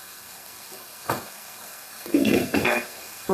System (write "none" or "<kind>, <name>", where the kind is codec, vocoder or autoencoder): codec, SNAC